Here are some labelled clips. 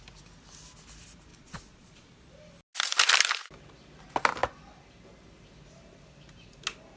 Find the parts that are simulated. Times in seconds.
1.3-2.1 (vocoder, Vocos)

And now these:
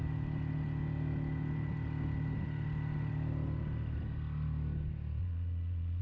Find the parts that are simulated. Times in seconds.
5.2-6.0 (vocoder, Vocos)

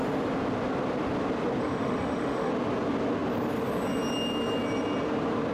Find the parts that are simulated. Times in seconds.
1.6-2.5 (autoencoder, DAC-VAE)

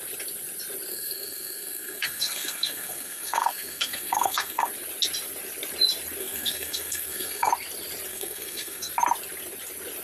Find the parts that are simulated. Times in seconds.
0.9-4.7 (codec, SNAC); 6.2-7.5; 8.1-8.9

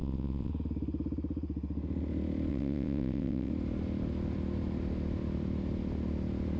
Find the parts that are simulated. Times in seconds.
0.0-0.5 (vocoder, WaveNeXt); 2.5-3.5